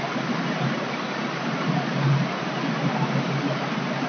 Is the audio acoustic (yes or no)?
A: yes